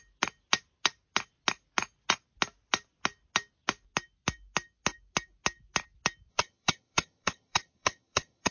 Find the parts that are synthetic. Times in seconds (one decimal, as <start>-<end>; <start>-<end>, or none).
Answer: 6.3-8.5